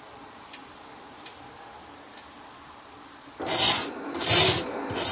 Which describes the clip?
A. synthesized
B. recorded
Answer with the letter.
B